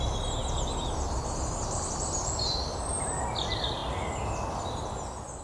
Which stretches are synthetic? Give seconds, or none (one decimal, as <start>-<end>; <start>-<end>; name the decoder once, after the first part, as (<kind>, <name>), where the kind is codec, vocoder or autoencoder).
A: none